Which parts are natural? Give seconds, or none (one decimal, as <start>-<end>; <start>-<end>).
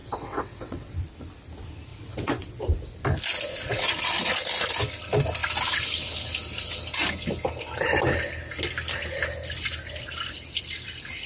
0.9-1.9; 2.6-11.3